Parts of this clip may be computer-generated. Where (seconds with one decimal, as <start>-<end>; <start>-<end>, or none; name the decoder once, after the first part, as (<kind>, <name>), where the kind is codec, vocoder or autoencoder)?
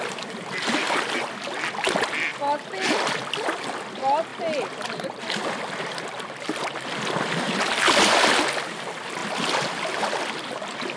none